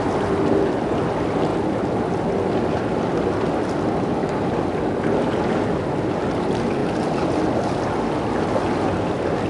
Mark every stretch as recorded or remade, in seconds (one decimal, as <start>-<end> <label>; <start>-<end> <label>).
0.0-9.5 recorded